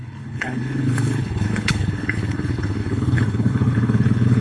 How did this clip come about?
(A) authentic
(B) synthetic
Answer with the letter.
B